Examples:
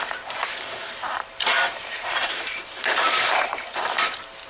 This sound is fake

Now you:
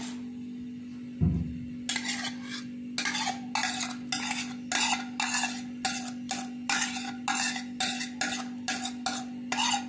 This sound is real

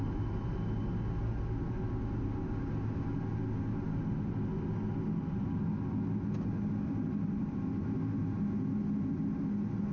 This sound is real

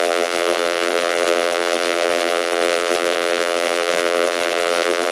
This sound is fake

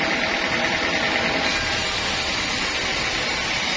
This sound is real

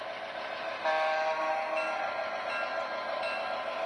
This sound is real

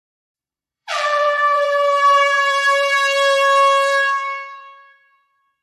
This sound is fake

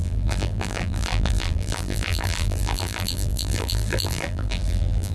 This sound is fake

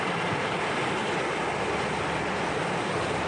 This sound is fake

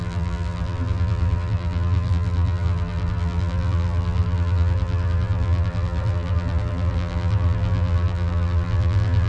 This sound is fake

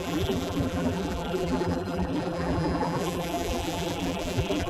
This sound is fake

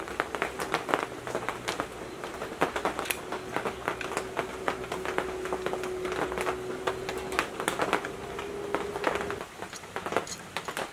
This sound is real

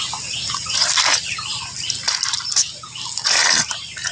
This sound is fake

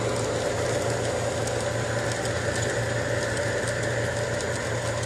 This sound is real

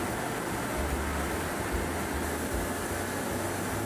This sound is real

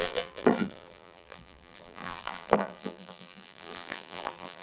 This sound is fake